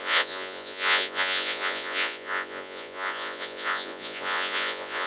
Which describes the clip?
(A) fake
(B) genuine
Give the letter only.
A